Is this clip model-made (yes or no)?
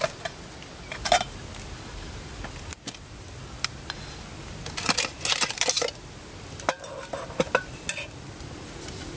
no